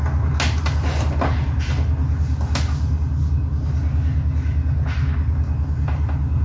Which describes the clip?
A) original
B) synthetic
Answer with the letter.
A